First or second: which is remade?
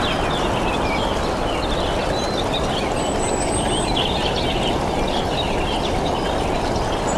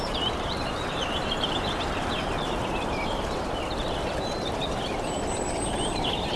second